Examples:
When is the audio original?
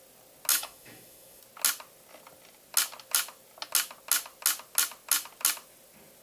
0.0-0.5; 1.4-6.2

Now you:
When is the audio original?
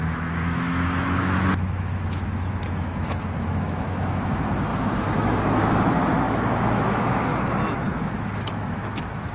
7.3-7.9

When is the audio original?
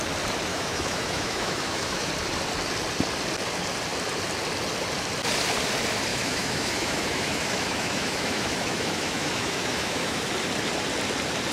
0.0-0.5; 2.1-6.1; 10.3-11.5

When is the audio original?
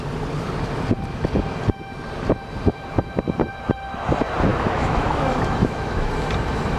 0.0-4.5; 6.1-6.8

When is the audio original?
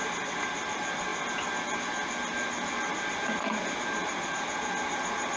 0.0-5.4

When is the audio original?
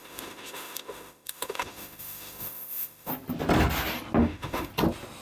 3.1-4.2; 4.7-5.2